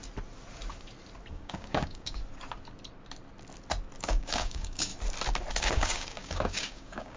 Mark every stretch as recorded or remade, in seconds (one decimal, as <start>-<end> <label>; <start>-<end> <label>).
0.0-1.3 recorded; 1.3-2.2 remade; 2.2-4.0 recorded; 4.0-4.9 remade; 4.9-5.6 recorded; 5.6-7.2 remade